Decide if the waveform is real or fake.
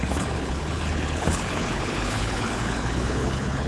fake